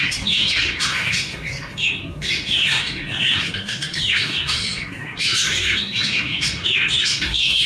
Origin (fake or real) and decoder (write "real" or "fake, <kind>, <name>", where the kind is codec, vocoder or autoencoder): fake, codec, SNAC